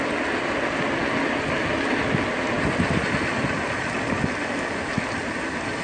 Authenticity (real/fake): real